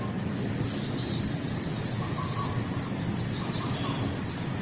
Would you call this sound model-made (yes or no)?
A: no